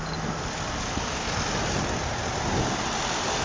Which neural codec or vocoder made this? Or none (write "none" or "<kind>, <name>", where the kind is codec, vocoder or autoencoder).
none